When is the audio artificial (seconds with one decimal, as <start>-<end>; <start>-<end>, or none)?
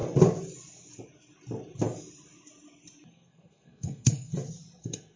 3.1-4.3; 4.8-5.2